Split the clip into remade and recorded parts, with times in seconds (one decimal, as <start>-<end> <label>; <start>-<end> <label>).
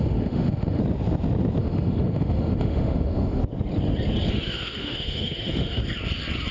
0.0-0.8 remade; 0.8-1.6 recorded; 1.6-3.4 remade; 3.4-4.3 recorded; 4.3-5.8 remade; 5.8-6.5 recorded